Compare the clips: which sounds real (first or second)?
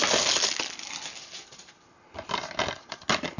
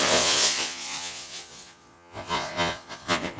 first